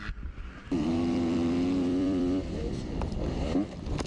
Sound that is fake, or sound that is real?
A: fake